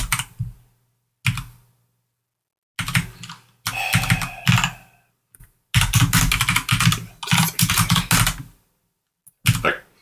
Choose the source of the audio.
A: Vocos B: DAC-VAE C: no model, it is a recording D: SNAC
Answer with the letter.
C